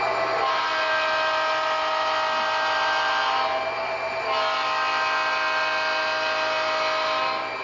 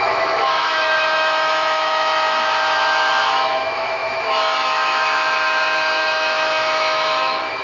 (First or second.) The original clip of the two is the first